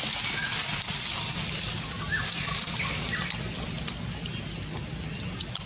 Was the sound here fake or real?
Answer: real